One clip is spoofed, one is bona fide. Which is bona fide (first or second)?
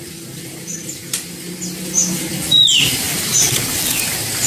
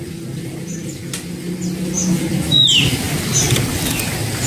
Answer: second